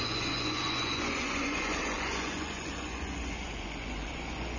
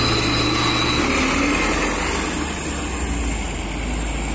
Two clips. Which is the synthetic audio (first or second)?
first